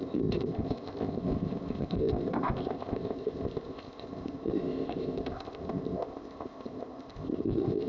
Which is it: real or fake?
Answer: fake